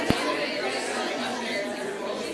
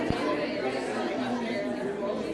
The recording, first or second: second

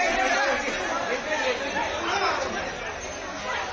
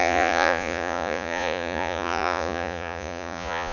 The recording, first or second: first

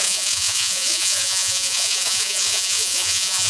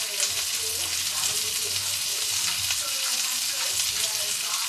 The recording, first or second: second